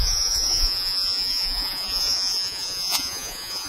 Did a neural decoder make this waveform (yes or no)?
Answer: yes